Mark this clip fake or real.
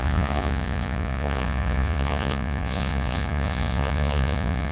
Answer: fake